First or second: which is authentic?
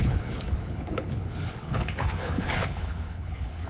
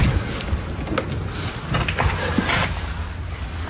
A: second